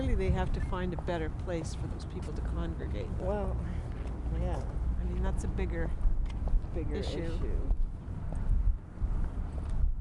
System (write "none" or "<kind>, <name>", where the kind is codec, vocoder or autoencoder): none